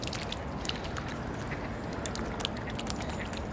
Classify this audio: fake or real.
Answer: real